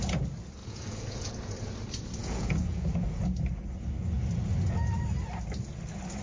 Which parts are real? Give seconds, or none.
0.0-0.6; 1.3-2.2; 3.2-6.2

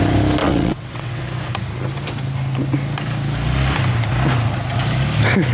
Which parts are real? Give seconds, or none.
0.0-0.4; 1.2-5.5

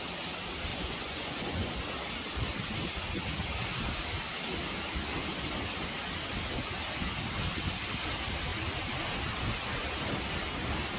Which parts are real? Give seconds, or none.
0.0-0.7; 1.7-11.0